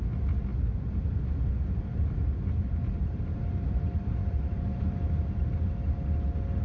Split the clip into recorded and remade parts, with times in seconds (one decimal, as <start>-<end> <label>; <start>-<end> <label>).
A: 0.0-1.9 recorded; 1.9-5.3 remade; 5.3-6.6 recorded